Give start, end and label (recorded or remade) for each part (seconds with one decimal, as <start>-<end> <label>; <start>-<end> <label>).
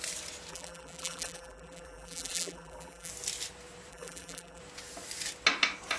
0.0-0.5 recorded; 0.5-3.1 remade; 3.1-3.9 recorded; 3.9-4.6 remade; 4.6-6.0 recorded